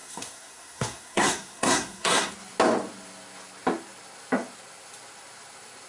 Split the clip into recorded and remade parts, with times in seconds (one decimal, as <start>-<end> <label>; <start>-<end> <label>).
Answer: 0.0-2.3 remade; 2.3-5.9 recorded